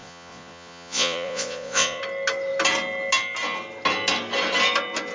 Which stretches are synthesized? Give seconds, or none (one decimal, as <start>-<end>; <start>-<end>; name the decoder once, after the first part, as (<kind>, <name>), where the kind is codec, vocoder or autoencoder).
0.0-2.0 (vocoder, Vocos)